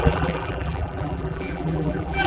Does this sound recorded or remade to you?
remade